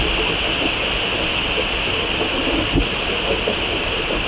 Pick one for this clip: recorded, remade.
recorded